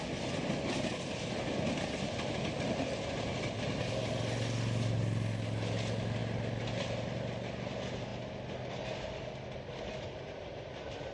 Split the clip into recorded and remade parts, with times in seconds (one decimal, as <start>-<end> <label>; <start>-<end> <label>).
0.0-11.1 recorded